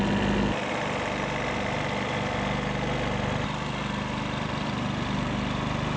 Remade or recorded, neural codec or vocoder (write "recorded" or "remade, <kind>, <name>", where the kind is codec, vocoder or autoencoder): recorded